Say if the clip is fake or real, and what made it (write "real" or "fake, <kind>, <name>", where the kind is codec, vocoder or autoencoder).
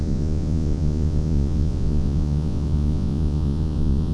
fake, vocoder, Vocos